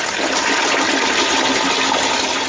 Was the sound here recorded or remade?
recorded